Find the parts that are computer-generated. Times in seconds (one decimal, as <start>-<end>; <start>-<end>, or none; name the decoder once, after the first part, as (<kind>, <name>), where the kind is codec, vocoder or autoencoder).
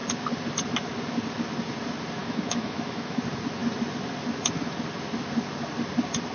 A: 2.2-3.2 (autoencoder, DAC-VAE)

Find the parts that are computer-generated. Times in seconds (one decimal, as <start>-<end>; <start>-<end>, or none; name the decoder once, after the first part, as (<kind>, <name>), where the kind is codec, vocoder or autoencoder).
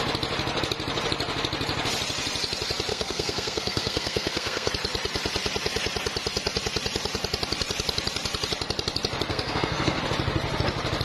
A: 2.9-4.7 (codec, SNAC); 9.3-10.0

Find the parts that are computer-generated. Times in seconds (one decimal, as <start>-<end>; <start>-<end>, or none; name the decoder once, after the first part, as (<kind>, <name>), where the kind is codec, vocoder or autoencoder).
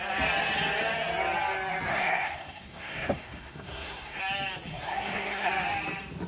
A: 1.9-4.2 (codec, SNAC); 4.7-5.5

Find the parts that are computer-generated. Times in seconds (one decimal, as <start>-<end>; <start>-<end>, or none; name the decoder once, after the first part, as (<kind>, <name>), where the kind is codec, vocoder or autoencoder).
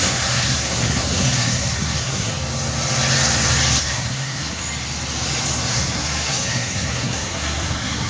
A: 0.0-2.3 (codec, SNAC); 3.8-4.6; 5.7-8.1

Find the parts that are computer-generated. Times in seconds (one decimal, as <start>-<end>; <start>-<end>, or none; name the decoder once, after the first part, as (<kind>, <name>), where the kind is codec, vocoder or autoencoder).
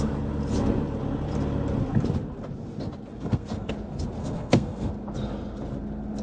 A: 3.1-3.7 (codec, SNAC); 4.2-4.9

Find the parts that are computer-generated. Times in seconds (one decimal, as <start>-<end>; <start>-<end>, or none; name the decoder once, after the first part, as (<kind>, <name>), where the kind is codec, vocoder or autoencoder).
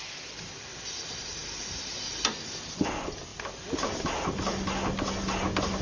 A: none